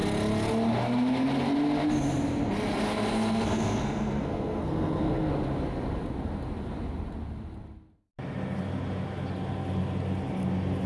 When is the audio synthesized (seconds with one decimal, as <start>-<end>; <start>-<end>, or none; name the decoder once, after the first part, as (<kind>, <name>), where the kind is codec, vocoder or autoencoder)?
3.1-5.3 (codec, SNAC)